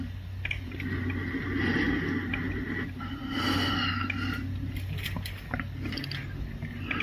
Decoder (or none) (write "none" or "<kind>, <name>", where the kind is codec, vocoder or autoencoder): none